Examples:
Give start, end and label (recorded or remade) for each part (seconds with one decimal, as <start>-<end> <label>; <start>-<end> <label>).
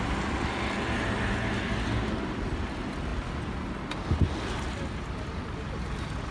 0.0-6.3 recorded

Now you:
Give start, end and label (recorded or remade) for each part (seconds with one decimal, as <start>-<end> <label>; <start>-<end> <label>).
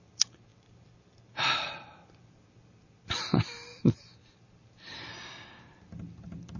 0.0-5.1 recorded; 5.1-5.6 remade; 5.6-6.6 recorded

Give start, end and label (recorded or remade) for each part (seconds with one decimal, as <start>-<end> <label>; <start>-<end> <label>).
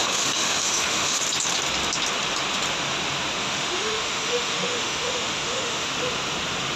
0.0-1.2 remade; 1.2-3.4 recorded; 3.4-5.9 remade; 5.9-6.8 recorded